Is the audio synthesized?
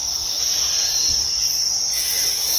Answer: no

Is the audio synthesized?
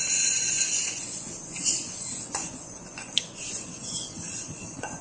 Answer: yes